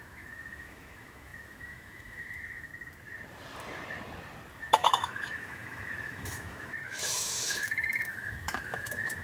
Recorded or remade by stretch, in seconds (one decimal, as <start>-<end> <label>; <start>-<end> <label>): 0.0-2.7 remade; 2.7-4.5 recorded; 4.5-9.2 remade